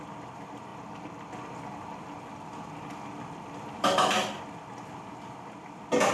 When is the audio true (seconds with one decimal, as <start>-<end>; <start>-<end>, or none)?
0.0-0.7; 4.4-6.1